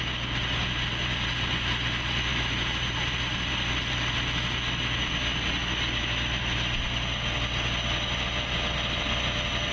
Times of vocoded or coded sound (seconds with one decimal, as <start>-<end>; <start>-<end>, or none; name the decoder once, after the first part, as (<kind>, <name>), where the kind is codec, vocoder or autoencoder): none